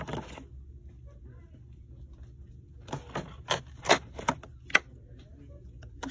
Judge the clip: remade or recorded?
recorded